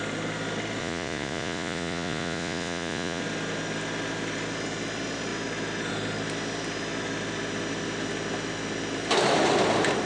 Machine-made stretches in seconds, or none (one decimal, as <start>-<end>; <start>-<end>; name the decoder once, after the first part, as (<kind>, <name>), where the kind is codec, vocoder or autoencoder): 0.8-3.2 (vocoder, Vocos)